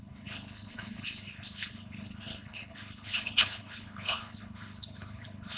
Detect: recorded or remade remade